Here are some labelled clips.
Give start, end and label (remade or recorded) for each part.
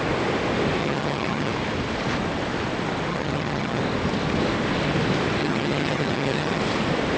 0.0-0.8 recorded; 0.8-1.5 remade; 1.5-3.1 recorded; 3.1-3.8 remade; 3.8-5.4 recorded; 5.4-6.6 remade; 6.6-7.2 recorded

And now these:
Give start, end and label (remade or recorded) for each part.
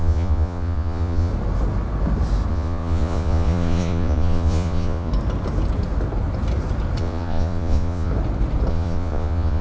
0.0-1.3 remade; 1.3-2.5 recorded; 2.5-5.1 remade; 5.1-7.0 recorded; 7.0-8.1 remade; 8.1-8.7 recorded; 8.7-9.6 remade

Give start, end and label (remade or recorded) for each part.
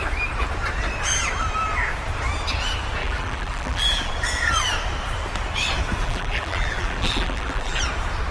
0.0-3.0 recorded; 3.0-4.1 remade; 4.1-6.0 recorded; 6.0-7.8 remade; 7.8-8.3 recorded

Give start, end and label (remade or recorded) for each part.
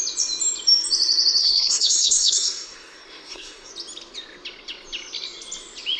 0.0-1.4 recorded; 1.4-3.7 remade; 3.7-6.0 recorded